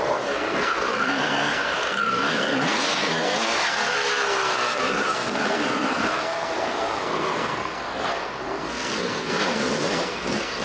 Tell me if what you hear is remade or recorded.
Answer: remade